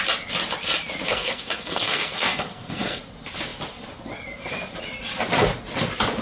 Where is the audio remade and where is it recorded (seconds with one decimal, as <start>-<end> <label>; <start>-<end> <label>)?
0.0-1.1 recorded; 1.1-3.0 remade; 3.0-6.2 recorded